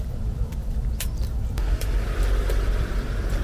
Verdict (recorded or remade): remade